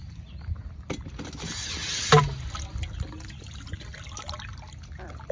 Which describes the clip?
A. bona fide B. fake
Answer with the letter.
A